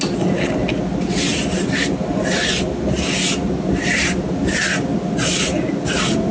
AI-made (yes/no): no